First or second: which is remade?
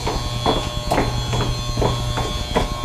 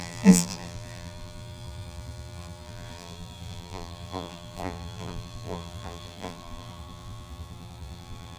second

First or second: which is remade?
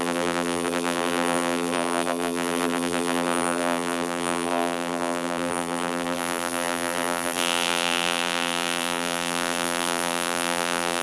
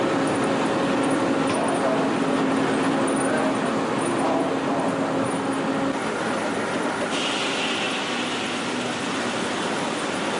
first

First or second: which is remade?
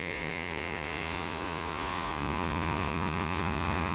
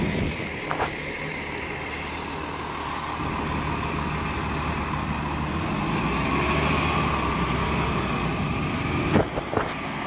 first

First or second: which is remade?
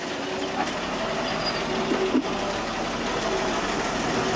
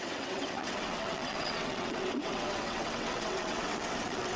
second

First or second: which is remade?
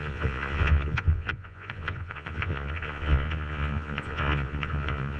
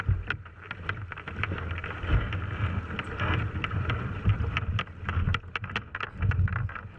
first